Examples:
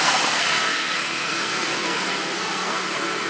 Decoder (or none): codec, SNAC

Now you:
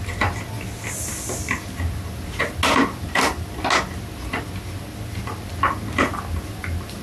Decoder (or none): none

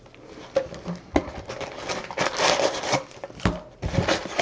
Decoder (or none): none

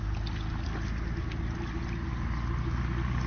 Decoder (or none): none